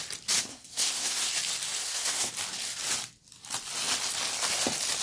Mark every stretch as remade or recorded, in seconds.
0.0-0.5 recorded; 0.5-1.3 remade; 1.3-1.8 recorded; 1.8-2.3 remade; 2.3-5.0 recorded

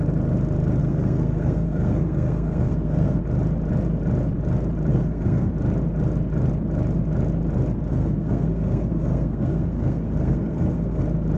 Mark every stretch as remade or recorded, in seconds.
0.0-0.8 recorded; 0.8-3.2 remade; 3.2-4.9 recorded; 4.9-5.5 remade; 5.5-7.9 recorded; 7.9-11.0 remade; 11.0-11.4 recorded